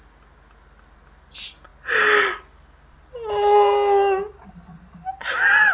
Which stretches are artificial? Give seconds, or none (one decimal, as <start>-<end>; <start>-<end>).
none